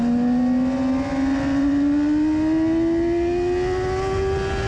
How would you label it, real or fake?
real